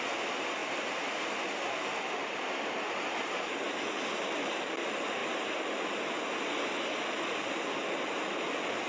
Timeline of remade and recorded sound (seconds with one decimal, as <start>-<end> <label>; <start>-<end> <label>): 0.0-0.6 recorded; 0.6-1.1 remade; 1.1-8.9 recorded